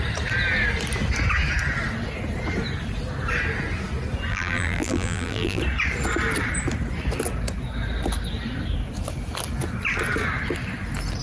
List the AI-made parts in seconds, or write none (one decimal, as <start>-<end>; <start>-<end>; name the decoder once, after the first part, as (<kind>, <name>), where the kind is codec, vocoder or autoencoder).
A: 4.3-5.6 (vocoder, BigVGAN v2)